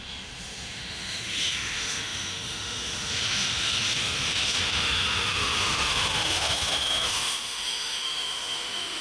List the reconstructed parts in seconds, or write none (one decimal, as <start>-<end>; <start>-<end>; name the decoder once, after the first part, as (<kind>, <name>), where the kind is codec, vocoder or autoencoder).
0.0-9.0 (autoencoder, DAC-VAE)